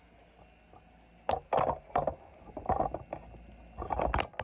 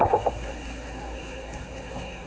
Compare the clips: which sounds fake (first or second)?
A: second